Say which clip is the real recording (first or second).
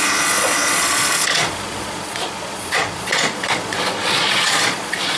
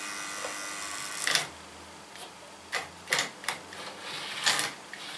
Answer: second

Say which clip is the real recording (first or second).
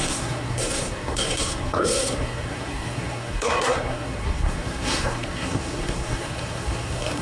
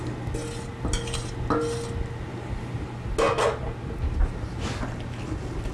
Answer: second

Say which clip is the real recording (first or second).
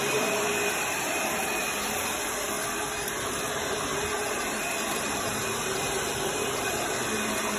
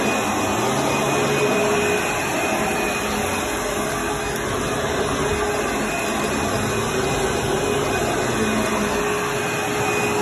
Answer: second